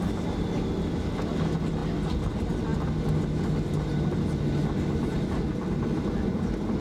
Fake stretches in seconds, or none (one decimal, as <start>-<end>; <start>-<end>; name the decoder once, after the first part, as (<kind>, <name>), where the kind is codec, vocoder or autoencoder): none